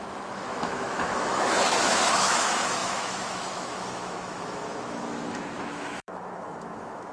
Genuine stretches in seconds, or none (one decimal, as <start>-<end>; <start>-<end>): none